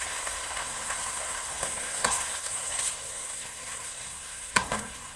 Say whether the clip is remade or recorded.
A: remade